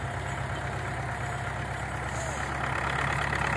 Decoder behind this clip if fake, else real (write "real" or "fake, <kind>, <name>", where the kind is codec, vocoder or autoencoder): real